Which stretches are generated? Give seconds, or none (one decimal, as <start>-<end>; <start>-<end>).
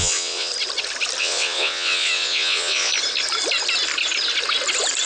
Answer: 0.0-0.5; 1.2-2.9